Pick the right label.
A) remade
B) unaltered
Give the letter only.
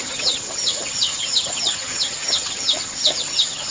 A